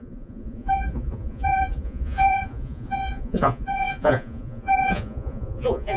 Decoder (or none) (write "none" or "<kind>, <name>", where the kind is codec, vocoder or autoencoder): vocoder, Vocos